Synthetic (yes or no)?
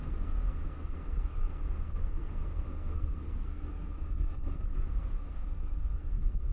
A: yes